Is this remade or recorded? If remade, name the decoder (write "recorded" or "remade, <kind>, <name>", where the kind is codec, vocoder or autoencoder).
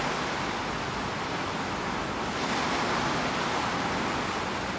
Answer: recorded